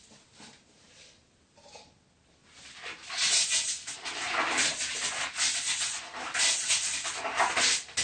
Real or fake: real